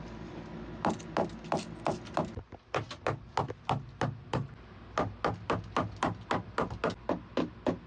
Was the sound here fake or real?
real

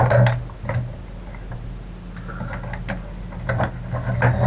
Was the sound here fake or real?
real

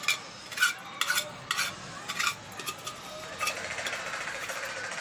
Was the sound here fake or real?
real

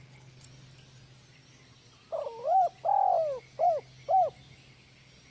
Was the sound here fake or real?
real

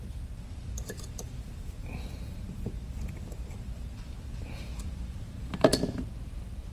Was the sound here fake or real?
fake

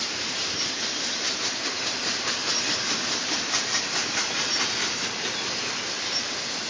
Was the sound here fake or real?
fake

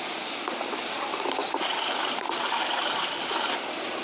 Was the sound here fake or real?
fake